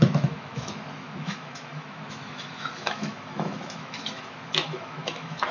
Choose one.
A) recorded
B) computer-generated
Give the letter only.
B